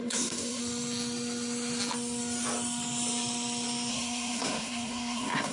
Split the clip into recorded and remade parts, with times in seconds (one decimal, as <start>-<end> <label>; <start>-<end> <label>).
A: 0.0-0.6 remade; 0.6-3.9 recorded; 3.9-5.5 remade